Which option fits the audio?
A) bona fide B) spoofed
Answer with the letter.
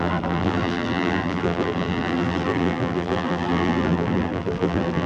B